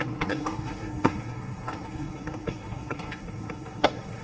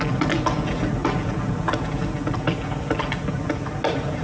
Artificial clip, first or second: first